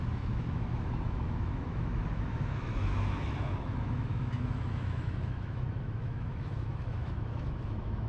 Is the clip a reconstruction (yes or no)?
yes